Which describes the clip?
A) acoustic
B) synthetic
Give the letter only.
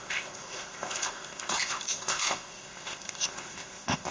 B